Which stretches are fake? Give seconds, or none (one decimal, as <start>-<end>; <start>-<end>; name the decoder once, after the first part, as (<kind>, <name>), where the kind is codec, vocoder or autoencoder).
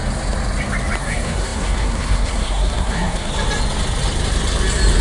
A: 1.0-3.3 (codec, SNAC)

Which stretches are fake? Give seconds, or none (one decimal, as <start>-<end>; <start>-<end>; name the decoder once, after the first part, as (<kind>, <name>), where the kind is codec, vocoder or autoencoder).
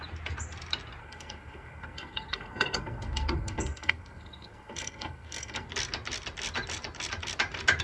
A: 1.0-5.7 (codec, SNAC)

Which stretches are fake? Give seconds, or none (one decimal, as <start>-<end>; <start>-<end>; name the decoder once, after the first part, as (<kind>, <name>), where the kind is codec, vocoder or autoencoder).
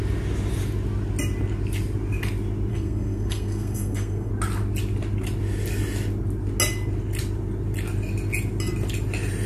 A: 2.7-4.3 (codec, SNAC)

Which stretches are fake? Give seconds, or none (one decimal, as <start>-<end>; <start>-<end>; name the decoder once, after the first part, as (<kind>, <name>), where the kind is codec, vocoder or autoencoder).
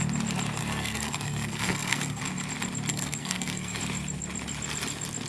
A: 0.6-2.2 (codec, SNAC); 2.9-3.8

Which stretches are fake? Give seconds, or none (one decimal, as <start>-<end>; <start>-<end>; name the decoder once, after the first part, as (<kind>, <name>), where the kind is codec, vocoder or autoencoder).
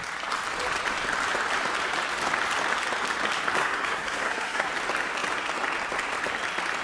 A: 3.6-4.7 (codec, SNAC)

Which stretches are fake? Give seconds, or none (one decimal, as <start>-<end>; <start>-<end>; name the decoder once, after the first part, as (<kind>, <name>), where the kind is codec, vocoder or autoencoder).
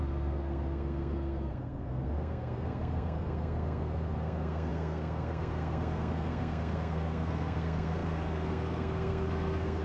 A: 0.0-9.8 (codec, SNAC)